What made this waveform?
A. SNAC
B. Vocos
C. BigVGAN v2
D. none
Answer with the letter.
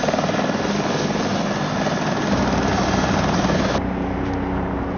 D